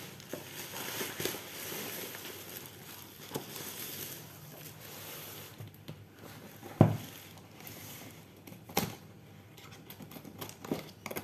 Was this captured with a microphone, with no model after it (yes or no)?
yes